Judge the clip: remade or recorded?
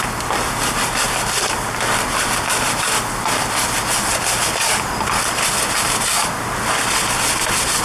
recorded